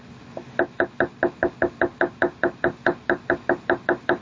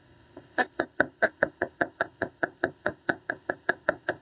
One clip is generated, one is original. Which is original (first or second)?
first